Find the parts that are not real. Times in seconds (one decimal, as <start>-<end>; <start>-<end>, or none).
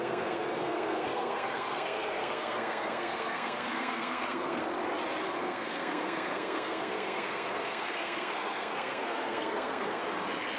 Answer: 0.0-4.6; 5.4-10.0